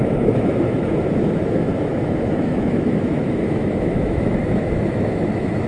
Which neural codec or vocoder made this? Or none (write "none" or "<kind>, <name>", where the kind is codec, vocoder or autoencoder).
autoencoder, DAC-VAE